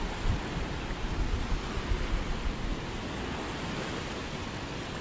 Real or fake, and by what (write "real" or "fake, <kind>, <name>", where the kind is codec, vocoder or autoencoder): real